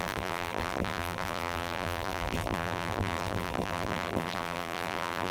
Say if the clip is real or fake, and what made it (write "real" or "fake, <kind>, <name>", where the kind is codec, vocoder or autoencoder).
fake, vocoder, BigVGAN v2